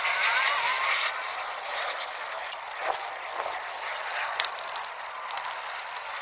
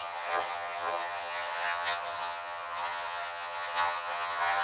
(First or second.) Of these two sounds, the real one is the first